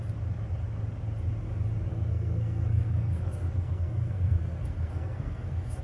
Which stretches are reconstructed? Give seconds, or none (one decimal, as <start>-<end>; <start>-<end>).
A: 1.9-5.8